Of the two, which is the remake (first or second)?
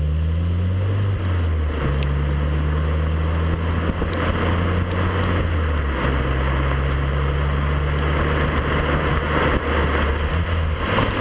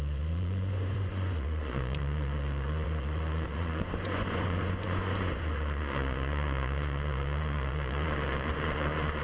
second